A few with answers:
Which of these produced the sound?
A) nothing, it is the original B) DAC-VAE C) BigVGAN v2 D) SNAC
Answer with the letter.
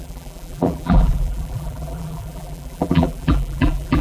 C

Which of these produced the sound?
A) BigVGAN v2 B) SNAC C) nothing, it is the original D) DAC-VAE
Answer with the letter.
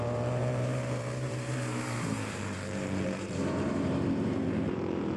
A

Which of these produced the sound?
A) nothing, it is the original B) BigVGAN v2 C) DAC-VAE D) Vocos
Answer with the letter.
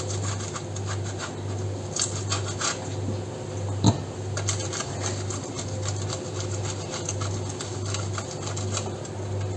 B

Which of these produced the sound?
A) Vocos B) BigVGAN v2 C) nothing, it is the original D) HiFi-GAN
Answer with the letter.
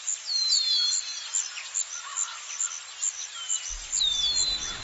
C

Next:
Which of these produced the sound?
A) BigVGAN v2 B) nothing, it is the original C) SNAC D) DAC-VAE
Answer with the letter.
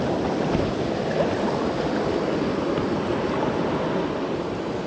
B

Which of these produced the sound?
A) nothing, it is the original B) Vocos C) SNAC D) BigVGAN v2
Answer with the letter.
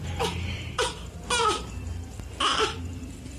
D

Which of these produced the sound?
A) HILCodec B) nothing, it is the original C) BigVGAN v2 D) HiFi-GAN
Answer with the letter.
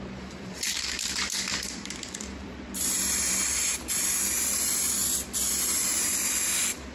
C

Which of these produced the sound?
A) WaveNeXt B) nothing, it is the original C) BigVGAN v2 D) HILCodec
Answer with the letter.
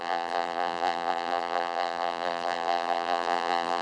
C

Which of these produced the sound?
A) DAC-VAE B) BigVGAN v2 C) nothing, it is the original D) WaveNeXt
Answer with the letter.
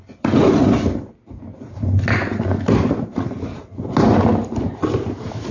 C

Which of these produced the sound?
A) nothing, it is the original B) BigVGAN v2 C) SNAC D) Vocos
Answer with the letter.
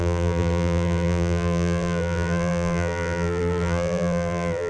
B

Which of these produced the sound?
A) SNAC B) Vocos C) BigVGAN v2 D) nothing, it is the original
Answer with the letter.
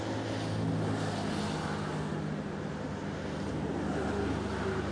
D